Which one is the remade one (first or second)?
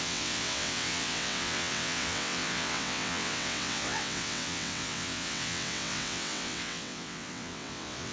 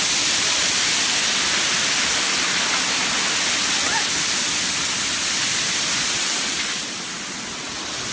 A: first